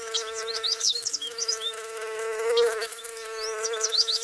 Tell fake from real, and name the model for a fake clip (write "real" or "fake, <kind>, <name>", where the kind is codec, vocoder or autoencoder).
fake, autoencoder, DAC-VAE